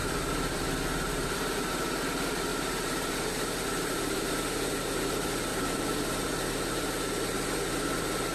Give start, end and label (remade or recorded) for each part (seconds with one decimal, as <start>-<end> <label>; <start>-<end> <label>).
0.0-1.7 remade; 1.7-2.5 recorded; 2.5-4.3 remade; 4.3-5.5 recorded; 5.5-6.3 remade; 6.3-8.3 recorded